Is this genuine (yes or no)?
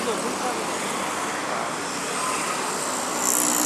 yes